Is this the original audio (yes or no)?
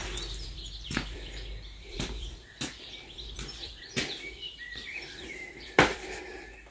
no